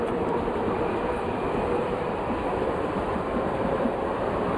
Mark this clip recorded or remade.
remade